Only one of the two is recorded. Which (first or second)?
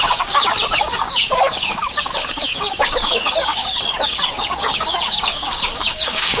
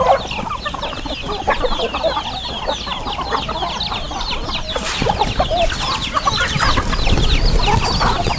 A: second